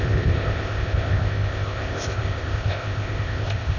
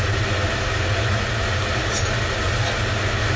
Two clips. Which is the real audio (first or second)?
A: second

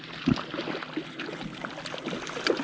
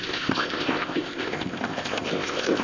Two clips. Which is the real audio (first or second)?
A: first